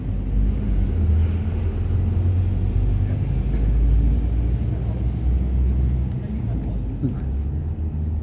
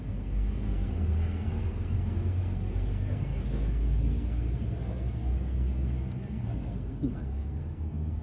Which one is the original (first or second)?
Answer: first